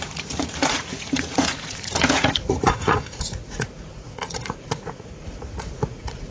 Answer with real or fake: fake